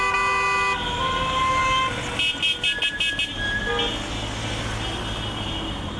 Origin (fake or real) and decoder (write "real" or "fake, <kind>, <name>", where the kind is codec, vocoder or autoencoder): real